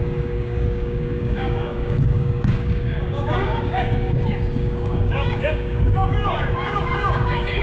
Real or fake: fake